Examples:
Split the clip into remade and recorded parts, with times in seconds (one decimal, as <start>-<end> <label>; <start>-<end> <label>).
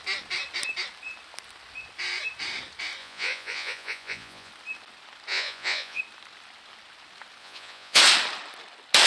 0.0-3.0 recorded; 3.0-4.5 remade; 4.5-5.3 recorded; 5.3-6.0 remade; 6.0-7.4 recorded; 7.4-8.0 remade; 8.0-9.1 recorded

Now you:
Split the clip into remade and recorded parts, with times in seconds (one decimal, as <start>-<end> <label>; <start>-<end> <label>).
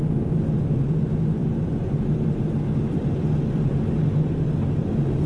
0.0-5.3 recorded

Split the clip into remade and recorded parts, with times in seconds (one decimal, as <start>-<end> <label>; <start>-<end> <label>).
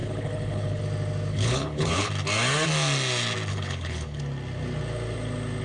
0.0-0.8 remade; 0.8-1.3 recorded; 1.3-2.1 remade; 2.1-3.5 recorded; 3.5-4.2 remade; 4.2-5.6 recorded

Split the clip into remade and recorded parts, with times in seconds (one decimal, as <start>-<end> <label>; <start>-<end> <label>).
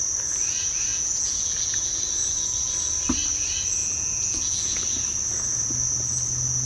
0.0-0.9 recorded; 0.9-1.9 remade; 1.9-3.8 recorded; 3.8-4.8 remade; 4.8-6.7 recorded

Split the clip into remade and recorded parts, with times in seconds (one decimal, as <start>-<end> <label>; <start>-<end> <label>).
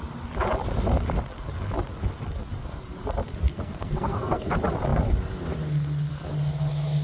0.0-3.5 recorded; 3.5-4.5 remade; 4.5-7.0 recorded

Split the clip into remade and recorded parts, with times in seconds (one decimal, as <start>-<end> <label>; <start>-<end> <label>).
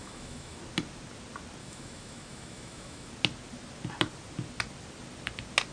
0.0-0.6 remade; 0.6-1.6 recorded; 1.6-3.1 remade; 3.1-5.7 recorded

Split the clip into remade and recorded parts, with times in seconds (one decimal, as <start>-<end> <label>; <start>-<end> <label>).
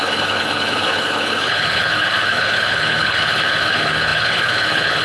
0.0-5.0 remade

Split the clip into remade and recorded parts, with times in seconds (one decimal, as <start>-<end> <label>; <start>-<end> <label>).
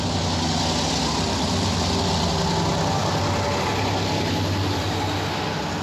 0.0-5.8 recorded